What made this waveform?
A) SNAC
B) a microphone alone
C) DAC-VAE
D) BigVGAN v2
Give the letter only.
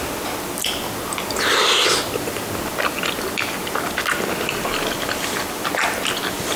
B